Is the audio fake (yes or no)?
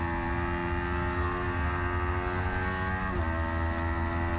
no